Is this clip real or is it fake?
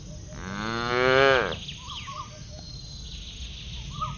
real